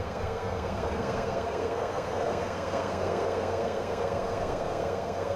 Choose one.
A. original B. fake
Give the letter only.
B